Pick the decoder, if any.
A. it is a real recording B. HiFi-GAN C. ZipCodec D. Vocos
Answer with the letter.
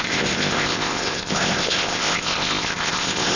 C